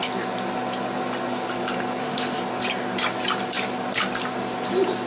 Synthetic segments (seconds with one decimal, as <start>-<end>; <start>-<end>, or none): 2.0-2.4